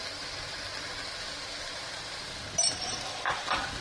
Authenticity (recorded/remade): recorded